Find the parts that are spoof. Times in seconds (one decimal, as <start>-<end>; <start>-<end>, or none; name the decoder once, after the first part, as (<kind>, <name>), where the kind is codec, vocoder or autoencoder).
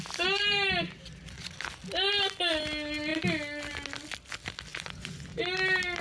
4.7-5.4 (vocoder, Vocos)